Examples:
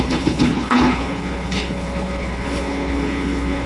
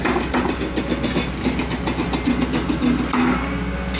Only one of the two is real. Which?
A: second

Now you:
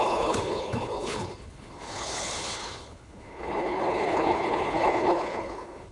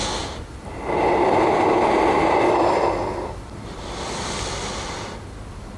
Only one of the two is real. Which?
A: second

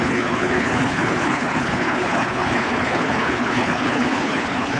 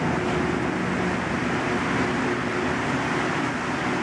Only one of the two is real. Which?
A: second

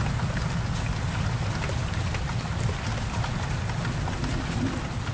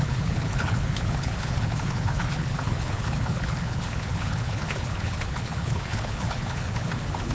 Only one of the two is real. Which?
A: first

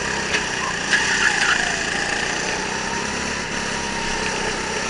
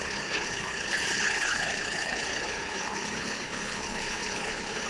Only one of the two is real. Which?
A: first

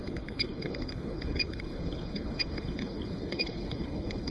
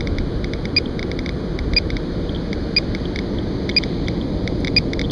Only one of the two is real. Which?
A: second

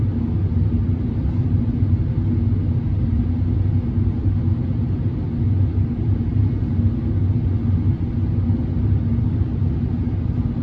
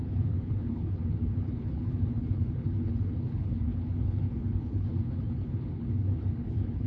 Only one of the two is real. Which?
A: first